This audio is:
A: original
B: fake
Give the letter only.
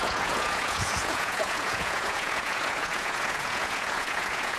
B